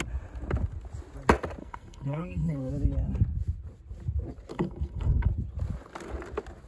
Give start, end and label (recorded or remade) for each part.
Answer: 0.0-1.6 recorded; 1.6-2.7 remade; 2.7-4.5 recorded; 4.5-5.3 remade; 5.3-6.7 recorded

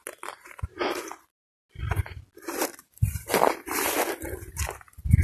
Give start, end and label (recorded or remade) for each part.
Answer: 0.0-2.2 recorded; 2.2-5.2 remade

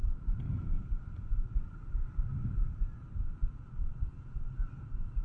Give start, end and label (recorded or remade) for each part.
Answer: 0.0-3.4 recorded; 3.4-4.2 remade; 4.2-5.2 recorded

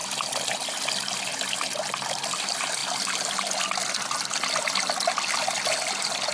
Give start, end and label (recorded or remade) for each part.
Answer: 0.0-0.7 recorded; 0.7-2.8 remade; 2.8-5.7 recorded; 5.7-6.3 remade

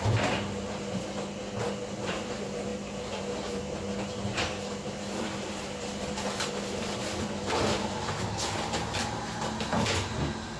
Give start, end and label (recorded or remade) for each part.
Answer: 0.0-10.6 recorded

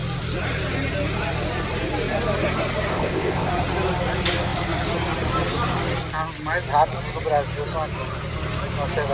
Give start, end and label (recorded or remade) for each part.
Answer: 0.0-2.9 recorded; 2.9-3.5 remade; 3.5-9.1 recorded

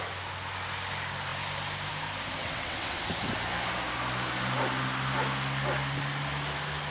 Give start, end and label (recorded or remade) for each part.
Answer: 0.0-2.4 recorded; 2.4-3.0 remade; 3.0-6.9 recorded